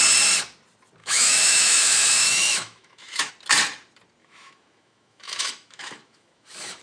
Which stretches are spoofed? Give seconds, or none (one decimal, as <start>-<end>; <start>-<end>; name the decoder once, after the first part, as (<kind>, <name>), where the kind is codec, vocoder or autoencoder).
1.0-3.3 (autoencoder, DAC-VAE); 4.2-6.8